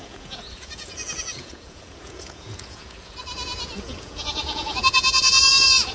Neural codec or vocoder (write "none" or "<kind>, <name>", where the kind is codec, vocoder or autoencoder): vocoder, Vocos